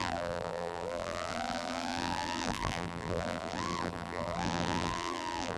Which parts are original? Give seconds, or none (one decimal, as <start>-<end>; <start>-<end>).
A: none